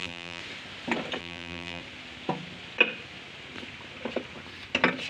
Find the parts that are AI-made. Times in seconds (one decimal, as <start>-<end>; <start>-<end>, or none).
0.0-0.4; 1.2-1.8